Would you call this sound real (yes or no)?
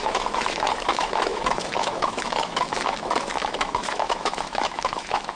no